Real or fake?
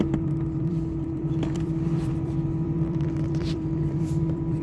fake